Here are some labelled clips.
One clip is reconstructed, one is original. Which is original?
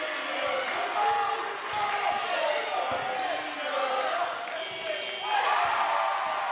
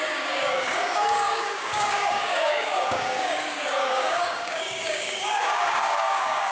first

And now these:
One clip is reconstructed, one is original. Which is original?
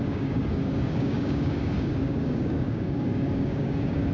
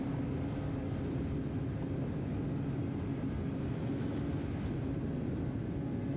second